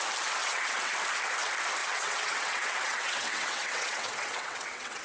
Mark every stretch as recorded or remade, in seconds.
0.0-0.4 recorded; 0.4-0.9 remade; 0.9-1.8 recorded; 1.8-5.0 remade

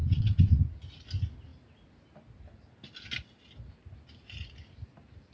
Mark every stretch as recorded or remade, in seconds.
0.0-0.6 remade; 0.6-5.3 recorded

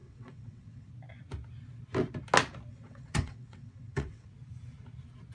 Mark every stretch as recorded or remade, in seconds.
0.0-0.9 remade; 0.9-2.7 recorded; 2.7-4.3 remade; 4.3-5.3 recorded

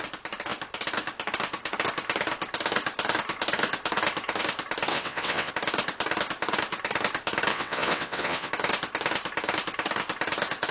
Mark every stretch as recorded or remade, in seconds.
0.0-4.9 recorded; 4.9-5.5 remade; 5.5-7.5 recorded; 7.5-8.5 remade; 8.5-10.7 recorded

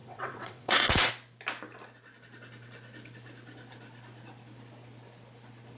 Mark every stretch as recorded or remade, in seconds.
0.0-1.1 remade; 1.1-5.8 recorded

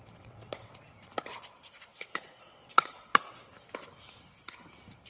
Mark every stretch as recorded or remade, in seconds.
0.0-0.7 remade; 0.7-1.9 recorded; 1.9-3.5 remade; 3.5-5.1 recorded

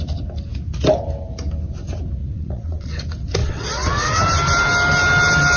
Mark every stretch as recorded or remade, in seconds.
0.0-2.2 recorded; 2.2-3.0 remade; 3.0-3.4 recorded; 3.4-4.2 remade; 4.2-5.6 recorded